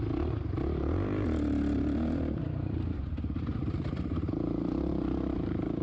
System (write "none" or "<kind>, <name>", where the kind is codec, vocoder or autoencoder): vocoder, BigVGAN v2